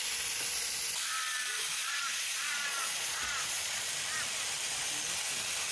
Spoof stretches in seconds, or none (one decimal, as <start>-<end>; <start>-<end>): 1.8-3.9